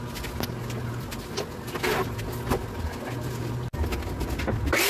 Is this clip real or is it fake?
real